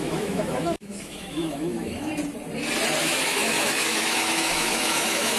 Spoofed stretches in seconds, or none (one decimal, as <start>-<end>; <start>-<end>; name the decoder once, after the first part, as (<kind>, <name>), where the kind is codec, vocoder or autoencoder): 0.0-2.1 (autoencoder, DAC-VAE); 3.0-5.4